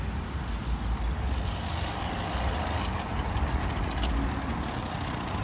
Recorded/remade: recorded